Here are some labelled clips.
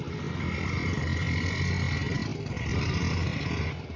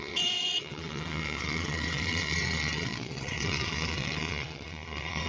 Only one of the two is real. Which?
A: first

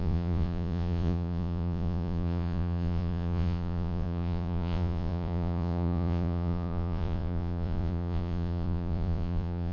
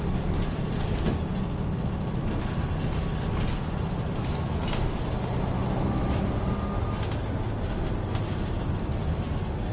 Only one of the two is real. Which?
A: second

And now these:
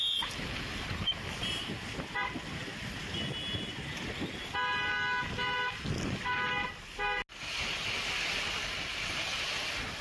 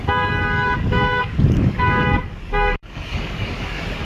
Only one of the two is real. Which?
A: first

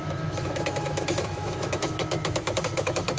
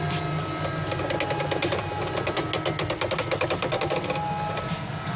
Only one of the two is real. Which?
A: second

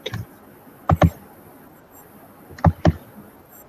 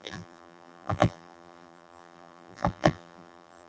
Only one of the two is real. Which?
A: first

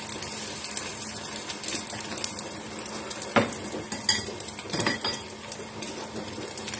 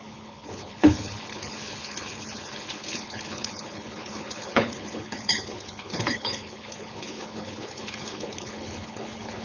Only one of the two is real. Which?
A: first